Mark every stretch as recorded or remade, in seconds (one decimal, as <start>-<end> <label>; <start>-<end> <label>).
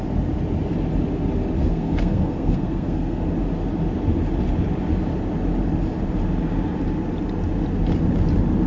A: 0.0-1.6 recorded; 1.6-3.2 remade; 3.2-8.7 recorded